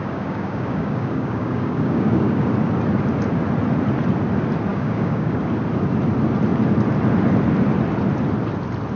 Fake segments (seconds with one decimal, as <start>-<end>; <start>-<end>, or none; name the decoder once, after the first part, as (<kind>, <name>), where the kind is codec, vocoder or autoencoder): 0.0-2.4 (codec, DAC); 4.7-5.4

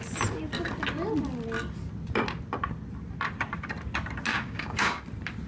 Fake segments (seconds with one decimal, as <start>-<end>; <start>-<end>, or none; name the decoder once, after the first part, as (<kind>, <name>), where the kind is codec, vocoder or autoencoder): 4.3-5.0 (codec, DAC)

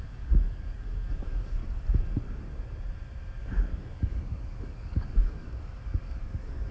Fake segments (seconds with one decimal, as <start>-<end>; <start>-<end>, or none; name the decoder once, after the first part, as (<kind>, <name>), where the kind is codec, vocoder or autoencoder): 0.0-1.6 (codec, DAC); 3.4-6.7